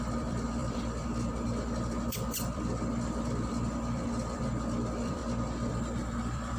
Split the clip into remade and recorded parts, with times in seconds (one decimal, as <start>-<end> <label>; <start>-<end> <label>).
0.0-5.2 remade; 5.2-5.7 recorded; 5.7-6.6 remade